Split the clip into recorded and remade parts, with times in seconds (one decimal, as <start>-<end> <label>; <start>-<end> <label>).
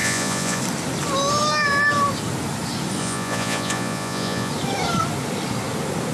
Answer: 0.0-0.6 remade; 0.6-3.0 recorded; 3.0-4.5 remade; 4.5-6.1 recorded